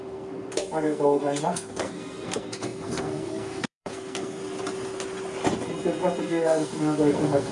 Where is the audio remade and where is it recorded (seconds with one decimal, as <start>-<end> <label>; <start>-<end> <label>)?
0.0-4.4 remade; 4.4-6.2 recorded; 6.2-7.5 remade